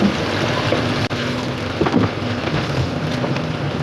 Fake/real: real